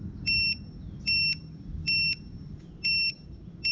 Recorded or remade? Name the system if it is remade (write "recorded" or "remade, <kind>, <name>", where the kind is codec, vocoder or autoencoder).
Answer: recorded